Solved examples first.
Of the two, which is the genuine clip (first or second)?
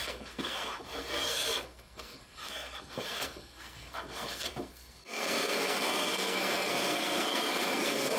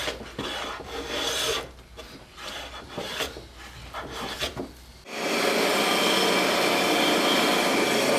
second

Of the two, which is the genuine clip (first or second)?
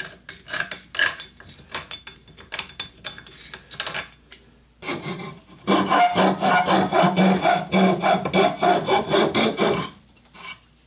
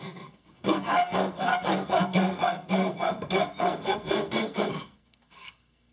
first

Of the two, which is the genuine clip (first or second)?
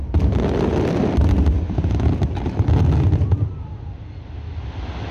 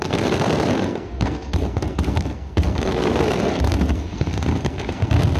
first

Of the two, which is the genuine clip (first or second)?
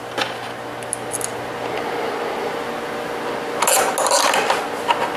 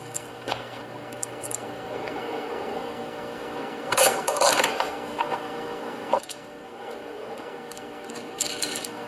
first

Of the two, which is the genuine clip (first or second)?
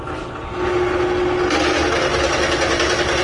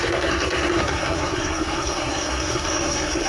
first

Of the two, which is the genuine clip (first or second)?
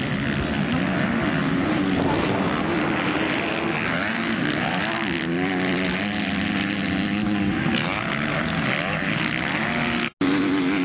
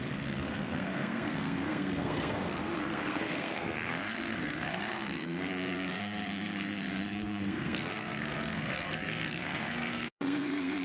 first